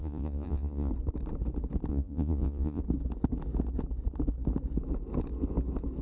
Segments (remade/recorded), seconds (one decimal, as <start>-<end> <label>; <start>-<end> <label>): 0.0-0.9 remade; 0.9-1.9 recorded; 1.9-2.8 remade; 2.8-6.0 recorded